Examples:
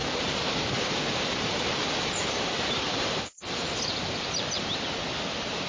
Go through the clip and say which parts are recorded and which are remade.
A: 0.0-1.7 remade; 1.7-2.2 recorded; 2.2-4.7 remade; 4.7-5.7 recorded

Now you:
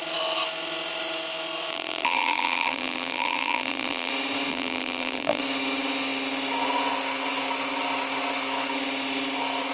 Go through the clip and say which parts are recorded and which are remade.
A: 0.0-1.7 recorded; 1.7-4.1 remade; 4.1-4.5 recorded; 4.5-5.4 remade; 5.4-9.7 recorded

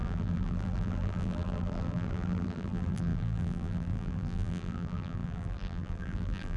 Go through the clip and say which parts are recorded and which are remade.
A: 0.0-6.6 remade

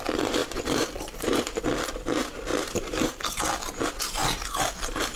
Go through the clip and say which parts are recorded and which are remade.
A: 0.0-0.4 recorded; 0.4-1.6 remade; 1.6-2.5 recorded; 2.5-3.4 remade; 3.4-5.2 recorded

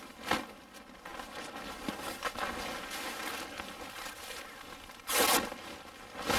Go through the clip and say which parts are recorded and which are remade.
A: 0.0-6.4 recorded

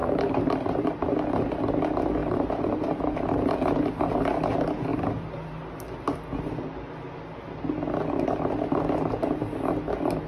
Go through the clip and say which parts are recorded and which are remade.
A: 0.0-1.1 remade; 1.1-2.2 recorded; 2.2-3.9 remade; 3.9-10.3 recorded